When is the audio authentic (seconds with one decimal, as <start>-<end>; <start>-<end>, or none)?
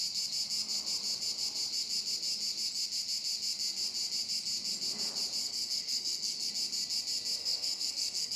0.0-5.4; 6.5-7.4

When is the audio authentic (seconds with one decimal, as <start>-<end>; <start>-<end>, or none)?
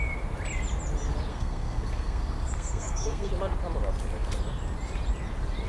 0.0-1.3; 3.3-5.7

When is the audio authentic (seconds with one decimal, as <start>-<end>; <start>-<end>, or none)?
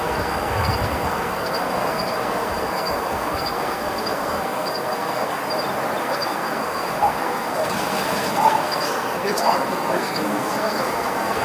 5.4-6.0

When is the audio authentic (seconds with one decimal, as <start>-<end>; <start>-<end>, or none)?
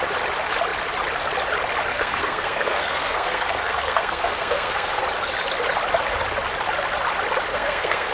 0.0-1.9; 5.0-7.5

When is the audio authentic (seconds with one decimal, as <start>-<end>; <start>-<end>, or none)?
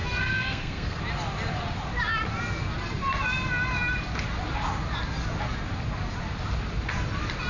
1.0-7.5